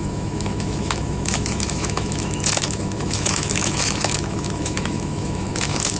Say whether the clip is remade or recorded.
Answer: remade